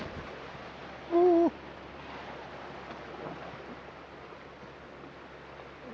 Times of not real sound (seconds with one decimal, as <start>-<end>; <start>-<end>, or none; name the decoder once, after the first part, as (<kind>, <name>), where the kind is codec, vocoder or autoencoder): none